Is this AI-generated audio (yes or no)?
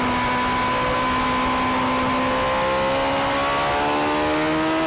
no